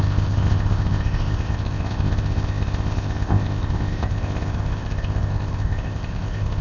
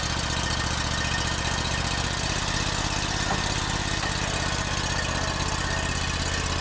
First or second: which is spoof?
first